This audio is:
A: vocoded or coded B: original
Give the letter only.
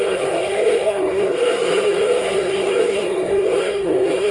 A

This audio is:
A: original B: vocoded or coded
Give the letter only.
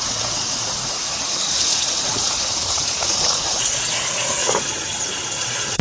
B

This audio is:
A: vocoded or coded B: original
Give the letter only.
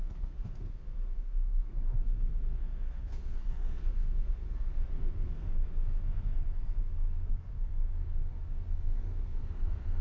A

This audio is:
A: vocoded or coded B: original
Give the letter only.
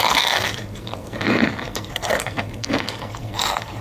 A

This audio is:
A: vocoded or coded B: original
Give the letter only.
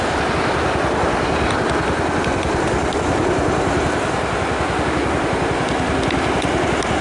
B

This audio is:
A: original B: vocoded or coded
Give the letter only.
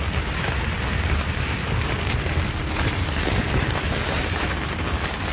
A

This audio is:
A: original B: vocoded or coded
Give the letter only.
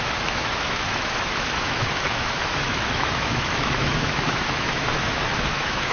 B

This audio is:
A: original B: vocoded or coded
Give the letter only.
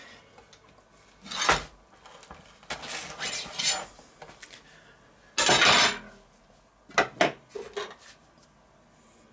A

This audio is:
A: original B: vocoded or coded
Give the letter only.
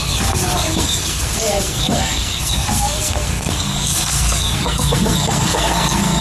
B